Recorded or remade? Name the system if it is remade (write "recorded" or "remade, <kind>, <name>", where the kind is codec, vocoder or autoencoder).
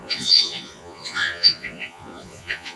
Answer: remade, vocoder, Vocos